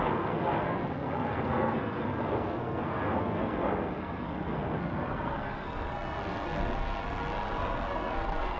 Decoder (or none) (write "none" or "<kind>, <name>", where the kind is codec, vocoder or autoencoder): codec, SNAC